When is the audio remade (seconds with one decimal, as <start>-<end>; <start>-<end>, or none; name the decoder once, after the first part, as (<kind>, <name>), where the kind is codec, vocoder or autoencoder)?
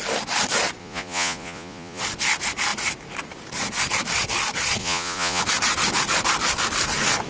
0.8-2.0 (vocoder, Vocos); 4.8-5.4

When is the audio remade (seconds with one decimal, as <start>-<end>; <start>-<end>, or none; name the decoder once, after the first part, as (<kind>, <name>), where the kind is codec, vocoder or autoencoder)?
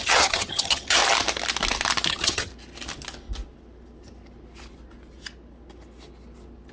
0.0-1.0 (vocoder, HiFi-GAN); 2.1-2.5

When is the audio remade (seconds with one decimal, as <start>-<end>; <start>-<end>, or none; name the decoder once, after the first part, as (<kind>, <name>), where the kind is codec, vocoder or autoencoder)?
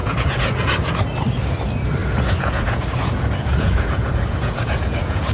0.0-1.0 (vocoder, Vocos); 2.0-5.3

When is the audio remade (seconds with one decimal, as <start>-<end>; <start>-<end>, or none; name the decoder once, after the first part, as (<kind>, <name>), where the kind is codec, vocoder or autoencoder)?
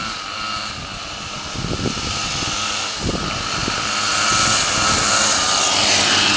none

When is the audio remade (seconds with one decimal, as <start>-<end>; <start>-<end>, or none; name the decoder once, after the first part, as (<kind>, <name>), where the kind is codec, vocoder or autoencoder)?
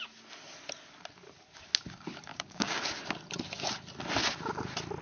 2.3-2.8 (codec, DAC)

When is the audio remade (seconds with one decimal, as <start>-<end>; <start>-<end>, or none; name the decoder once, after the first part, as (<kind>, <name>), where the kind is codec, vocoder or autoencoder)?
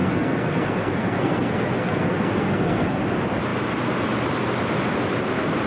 0.0-3.0 (codec, SNAC)